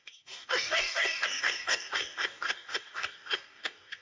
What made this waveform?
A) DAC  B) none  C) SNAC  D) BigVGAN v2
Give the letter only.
A